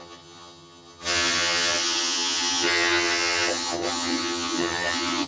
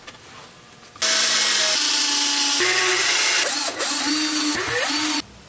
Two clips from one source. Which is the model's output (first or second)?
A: first